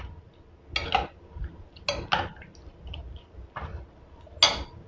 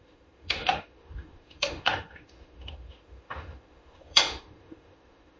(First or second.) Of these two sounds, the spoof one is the second